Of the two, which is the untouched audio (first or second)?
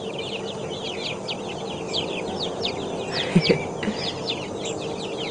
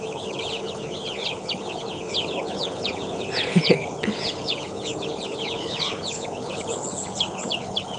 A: first